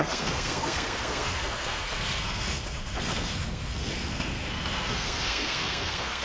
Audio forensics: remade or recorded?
remade